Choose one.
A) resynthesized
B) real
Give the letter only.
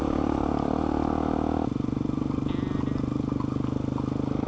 B